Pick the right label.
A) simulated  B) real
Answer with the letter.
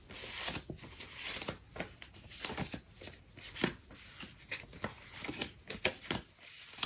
B